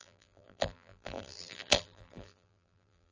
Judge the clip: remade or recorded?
remade